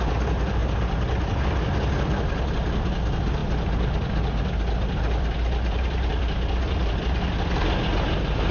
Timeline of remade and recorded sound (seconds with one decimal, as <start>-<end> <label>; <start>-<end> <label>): 0.0-8.5 recorded